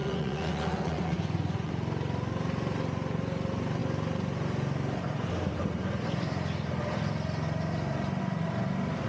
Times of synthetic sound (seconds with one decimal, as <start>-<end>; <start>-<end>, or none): 0.0-1.7